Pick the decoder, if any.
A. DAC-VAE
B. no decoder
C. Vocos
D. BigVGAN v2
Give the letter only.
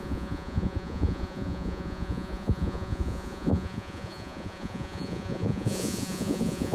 C